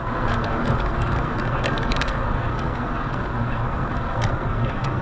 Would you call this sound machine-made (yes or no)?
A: yes